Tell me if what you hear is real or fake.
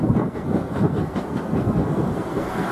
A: fake